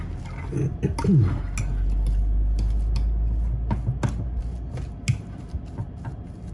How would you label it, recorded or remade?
recorded